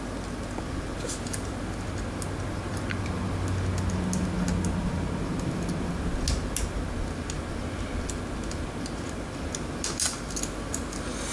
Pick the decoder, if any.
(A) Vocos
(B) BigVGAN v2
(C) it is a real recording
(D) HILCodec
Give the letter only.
C